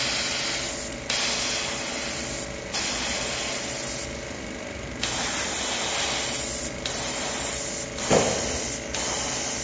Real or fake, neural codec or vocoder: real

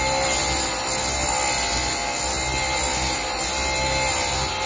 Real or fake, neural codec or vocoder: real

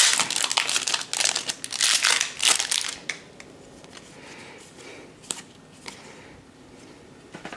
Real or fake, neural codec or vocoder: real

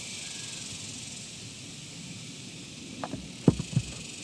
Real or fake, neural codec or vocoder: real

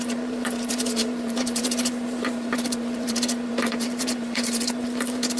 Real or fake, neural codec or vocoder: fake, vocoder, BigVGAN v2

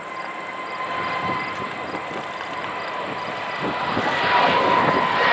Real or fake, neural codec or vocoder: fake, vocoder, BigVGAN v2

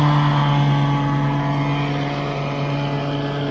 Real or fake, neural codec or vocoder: real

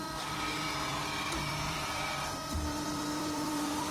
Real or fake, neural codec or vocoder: fake, vocoder, BigVGAN v2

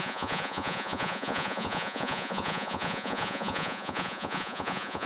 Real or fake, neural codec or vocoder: fake, vocoder, Vocos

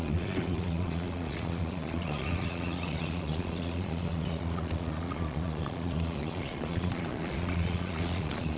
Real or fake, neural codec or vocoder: fake, vocoder, Vocos